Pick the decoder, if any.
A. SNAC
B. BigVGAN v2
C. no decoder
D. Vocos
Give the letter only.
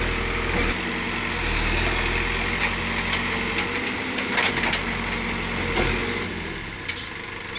C